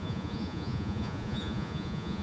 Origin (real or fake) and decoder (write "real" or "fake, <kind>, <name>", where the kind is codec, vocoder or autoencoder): fake, vocoder, Vocos